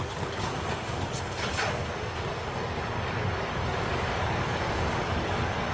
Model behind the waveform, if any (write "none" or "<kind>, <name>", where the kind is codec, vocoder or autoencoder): codec, DAC